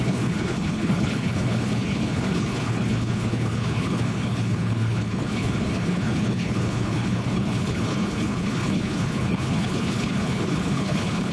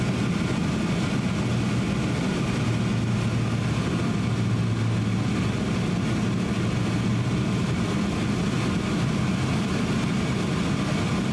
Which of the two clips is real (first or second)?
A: second